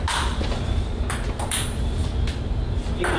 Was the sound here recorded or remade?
recorded